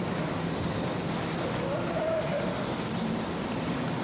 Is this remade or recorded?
recorded